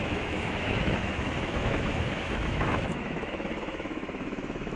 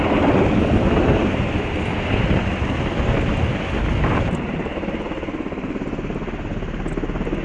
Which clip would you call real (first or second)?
second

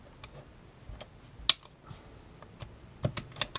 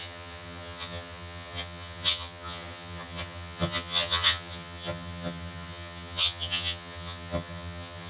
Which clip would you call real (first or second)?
first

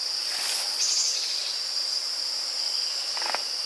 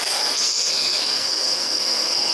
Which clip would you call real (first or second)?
first